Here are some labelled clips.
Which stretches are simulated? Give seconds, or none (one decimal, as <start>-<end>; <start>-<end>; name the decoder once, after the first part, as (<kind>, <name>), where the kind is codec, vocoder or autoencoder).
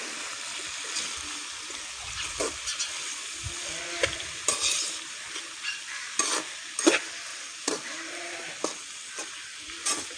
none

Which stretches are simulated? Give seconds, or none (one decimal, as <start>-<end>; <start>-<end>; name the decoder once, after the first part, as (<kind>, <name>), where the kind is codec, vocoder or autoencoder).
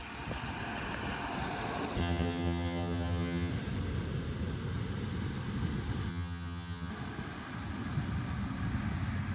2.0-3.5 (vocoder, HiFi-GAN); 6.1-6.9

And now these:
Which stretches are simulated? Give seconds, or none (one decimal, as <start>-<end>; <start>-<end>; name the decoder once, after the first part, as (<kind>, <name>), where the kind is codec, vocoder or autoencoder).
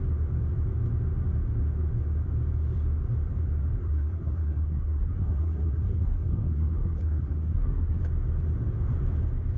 3.8-8.0 (codec, SNAC)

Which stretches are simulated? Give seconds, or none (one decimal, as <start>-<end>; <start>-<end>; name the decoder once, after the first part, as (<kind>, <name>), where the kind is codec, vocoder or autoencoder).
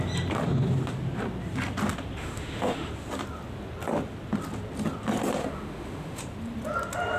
2.2-2.9 (autoencoder, DAC-VAE); 5.4-6.2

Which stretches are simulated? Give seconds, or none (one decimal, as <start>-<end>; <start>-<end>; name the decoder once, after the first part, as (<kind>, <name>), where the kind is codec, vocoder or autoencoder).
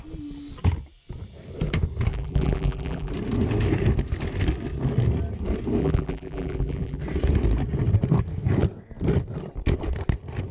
2.1-3.1 (vocoder, BigVGAN v2); 5.8-7.0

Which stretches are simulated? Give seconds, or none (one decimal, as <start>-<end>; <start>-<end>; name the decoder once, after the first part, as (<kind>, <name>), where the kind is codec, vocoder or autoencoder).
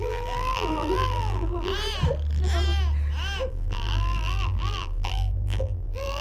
0.0-1.7 (vocoder, BigVGAN v2); 3.5-6.2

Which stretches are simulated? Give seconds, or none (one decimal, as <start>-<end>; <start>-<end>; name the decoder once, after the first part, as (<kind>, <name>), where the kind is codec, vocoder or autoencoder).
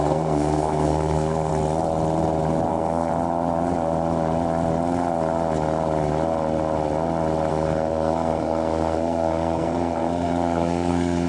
0.0-1.5 (codec, SNAC); 2.7-3.1; 7.5-11.3